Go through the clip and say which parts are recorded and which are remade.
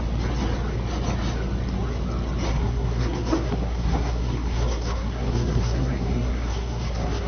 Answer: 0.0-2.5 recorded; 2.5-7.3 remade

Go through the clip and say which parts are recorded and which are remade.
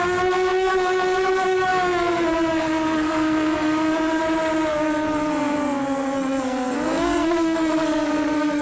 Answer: 0.0-4.2 remade; 4.2-4.7 recorded; 4.7-8.6 remade